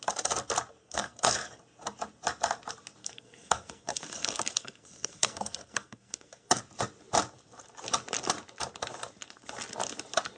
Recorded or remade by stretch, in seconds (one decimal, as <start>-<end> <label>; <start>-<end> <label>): 0.0-0.8 recorded; 0.8-1.6 remade; 1.6-3.0 recorded; 3.0-6.6 remade; 6.6-10.4 recorded